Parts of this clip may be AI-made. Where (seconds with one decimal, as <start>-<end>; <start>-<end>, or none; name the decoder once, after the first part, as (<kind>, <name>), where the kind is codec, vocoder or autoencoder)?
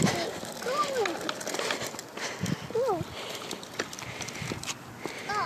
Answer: none